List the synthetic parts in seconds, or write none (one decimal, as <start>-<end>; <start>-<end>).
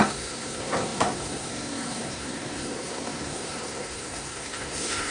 0.0-5.1